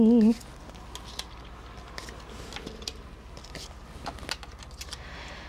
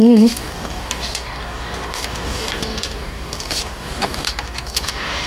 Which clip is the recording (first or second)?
first